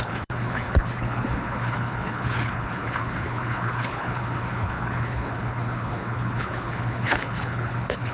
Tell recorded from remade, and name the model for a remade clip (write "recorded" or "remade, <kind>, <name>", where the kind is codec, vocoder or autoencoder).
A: remade, codec, HILCodec